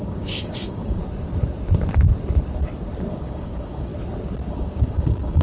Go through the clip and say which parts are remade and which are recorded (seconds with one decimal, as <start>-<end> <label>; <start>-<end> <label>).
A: 0.0-1.0 remade; 1.0-3.1 recorded; 3.1-3.9 remade; 3.9-4.5 recorded; 4.5-5.4 remade